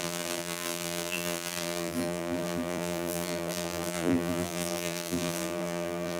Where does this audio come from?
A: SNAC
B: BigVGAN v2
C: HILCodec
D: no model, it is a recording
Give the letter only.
B